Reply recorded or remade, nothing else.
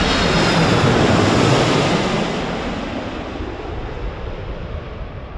recorded